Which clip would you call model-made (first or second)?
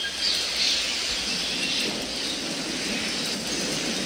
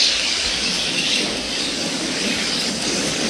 second